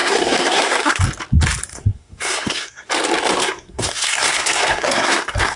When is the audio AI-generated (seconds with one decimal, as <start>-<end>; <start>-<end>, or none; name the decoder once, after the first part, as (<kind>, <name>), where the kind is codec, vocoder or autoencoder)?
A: 0.0-1.0 (codec, SNAC); 1.7-2.9; 3.4-5.6